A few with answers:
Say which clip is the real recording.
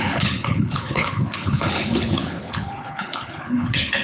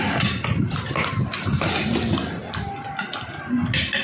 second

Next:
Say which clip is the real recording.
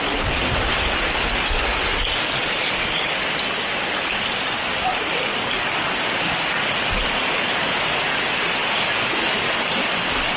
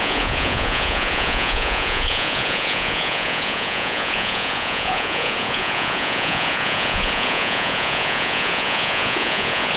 first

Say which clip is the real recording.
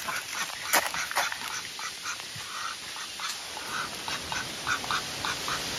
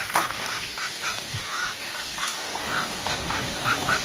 first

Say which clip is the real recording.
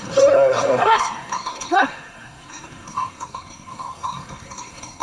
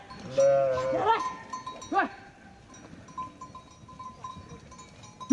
second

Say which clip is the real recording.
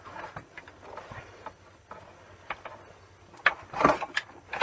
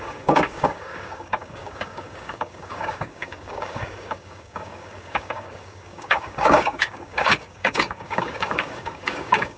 first